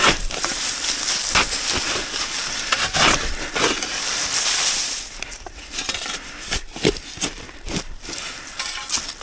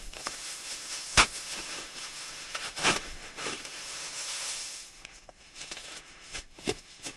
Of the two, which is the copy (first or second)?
second